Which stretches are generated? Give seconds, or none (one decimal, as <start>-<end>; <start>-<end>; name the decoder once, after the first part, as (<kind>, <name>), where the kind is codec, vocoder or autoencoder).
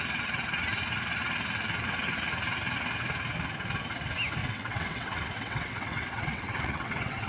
4.4-7.3 (vocoder, WaveNeXt)